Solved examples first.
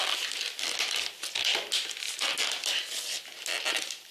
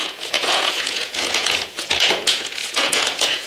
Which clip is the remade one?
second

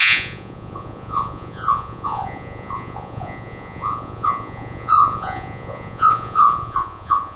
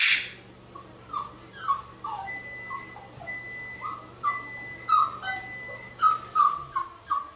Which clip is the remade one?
first